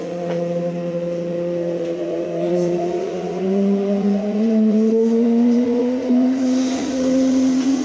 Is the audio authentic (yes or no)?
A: no